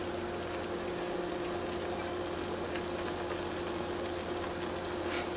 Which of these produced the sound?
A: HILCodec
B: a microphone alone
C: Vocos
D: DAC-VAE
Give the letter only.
B